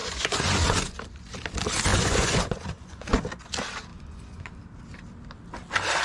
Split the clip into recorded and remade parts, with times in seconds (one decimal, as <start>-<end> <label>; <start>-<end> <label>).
0.0-1.0 remade; 1.0-1.9 recorded; 1.9-3.3 remade; 3.3-3.9 recorded; 3.9-4.5 remade; 4.5-6.0 recorded